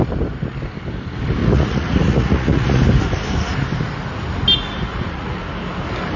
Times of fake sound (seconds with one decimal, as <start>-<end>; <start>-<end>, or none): 1.4-2.8; 4.9-5.4